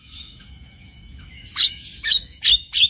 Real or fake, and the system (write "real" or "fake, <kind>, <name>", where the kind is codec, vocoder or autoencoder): fake, autoencoder, DAC-VAE